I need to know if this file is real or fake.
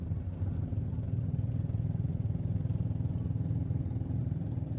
fake